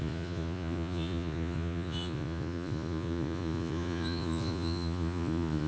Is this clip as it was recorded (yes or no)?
no